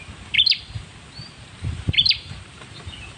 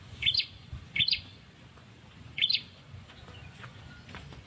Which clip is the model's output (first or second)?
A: second